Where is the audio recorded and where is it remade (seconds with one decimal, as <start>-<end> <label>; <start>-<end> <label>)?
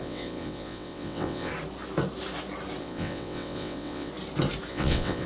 0.0-1.5 remade; 1.5-2.8 recorded; 2.8-4.1 remade; 4.1-4.7 recorded; 4.7-5.3 remade